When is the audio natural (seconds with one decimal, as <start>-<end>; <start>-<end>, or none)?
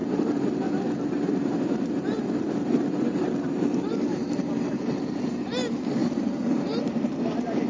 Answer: none